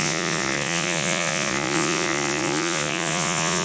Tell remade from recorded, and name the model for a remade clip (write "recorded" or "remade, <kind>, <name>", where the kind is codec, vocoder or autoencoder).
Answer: remade, vocoder, Vocos